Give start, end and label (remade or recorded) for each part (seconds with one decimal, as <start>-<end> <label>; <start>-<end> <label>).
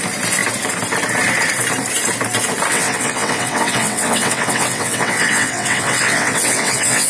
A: 0.0-2.7 recorded; 2.7-7.1 remade